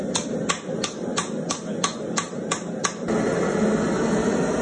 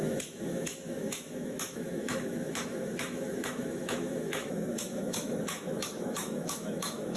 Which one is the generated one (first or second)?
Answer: second